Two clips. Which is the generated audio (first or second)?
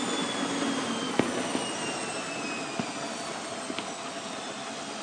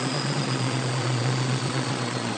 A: second